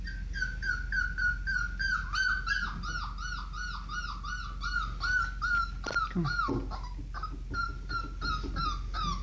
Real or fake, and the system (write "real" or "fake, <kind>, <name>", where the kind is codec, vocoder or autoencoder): real